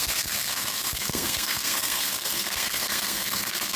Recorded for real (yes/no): no